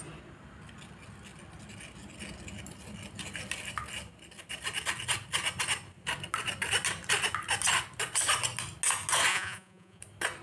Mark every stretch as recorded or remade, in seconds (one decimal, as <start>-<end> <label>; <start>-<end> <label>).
0.0-9.3 recorded; 9.3-10.0 remade; 10.0-10.4 recorded